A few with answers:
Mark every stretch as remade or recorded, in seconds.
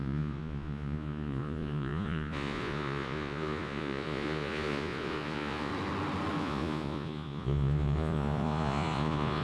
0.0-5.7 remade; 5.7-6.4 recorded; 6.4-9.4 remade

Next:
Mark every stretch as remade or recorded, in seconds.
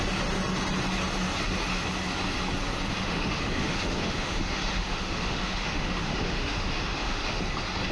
0.0-2.9 recorded; 2.9-7.4 remade; 7.4-7.9 recorded